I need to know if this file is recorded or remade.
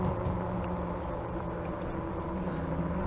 recorded